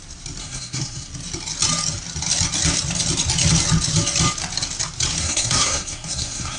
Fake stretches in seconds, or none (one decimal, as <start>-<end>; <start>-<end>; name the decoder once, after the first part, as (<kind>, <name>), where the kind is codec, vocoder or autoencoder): 0.4-1.1 (codec, SNAC); 5.2-6.6